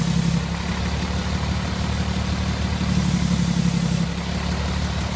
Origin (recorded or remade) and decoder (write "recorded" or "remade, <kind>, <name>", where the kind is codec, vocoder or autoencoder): recorded